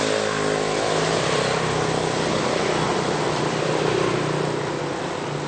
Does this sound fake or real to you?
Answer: real